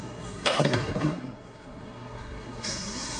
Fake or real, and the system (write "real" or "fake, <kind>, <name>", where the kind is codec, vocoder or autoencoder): fake, codec, SNAC